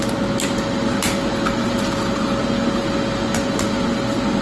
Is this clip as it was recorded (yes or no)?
yes